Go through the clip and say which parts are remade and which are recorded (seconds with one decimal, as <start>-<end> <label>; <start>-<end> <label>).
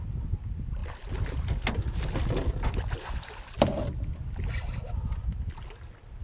0.0-6.2 recorded